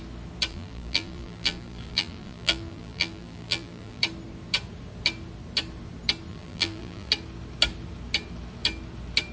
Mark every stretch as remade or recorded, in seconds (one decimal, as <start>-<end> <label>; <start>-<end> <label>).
0.0-0.5 recorded; 0.5-4.0 remade; 4.0-6.3 recorded; 6.3-7.1 remade; 7.1-9.3 recorded